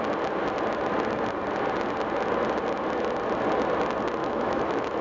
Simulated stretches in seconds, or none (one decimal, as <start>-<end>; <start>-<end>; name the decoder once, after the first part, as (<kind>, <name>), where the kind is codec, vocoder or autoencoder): 4.2-5.0 (autoencoder, DAC-VAE)